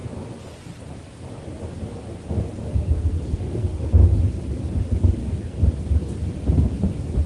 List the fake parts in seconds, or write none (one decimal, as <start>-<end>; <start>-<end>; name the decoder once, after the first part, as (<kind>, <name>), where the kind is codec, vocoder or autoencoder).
2.6-4.2 (codec, SNAC); 5.2-5.7